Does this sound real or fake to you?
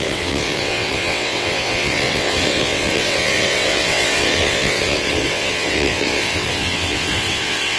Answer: fake